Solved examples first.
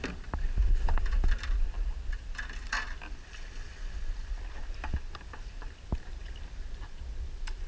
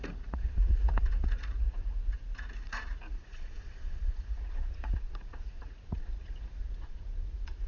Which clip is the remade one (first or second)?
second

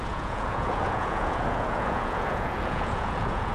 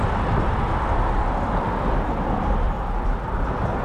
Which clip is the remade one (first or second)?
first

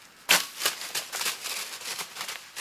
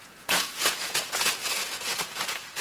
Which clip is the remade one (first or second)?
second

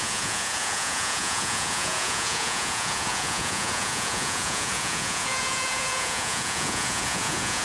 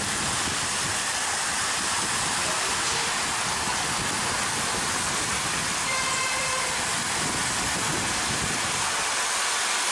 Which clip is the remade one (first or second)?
first